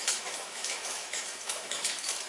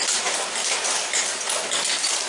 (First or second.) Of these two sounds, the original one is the second